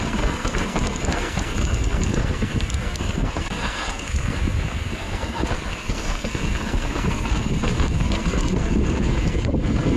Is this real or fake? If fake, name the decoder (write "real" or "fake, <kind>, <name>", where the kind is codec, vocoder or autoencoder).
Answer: fake, codec, SNAC